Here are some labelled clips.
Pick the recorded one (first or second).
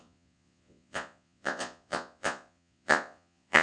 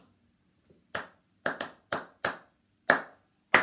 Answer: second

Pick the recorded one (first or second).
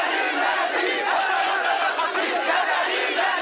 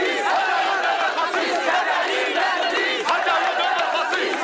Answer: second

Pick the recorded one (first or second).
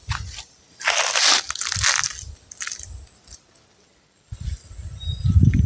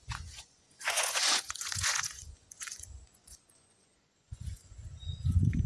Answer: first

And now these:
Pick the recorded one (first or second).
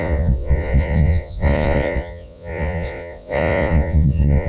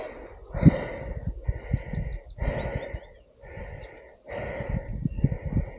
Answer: second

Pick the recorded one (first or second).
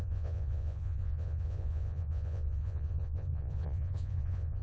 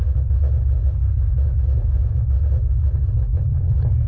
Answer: second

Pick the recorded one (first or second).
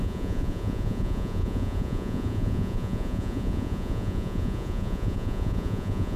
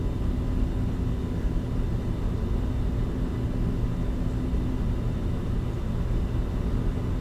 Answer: second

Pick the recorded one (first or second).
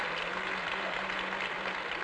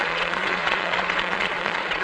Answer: first